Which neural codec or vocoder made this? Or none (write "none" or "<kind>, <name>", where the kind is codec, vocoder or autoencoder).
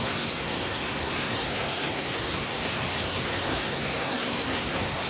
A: codec, SNAC